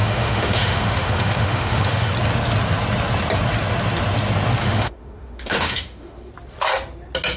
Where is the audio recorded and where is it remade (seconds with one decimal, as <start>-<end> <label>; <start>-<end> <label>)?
0.0-2.1 remade; 2.1-4.6 recorded; 4.6-6.3 remade; 6.3-7.4 recorded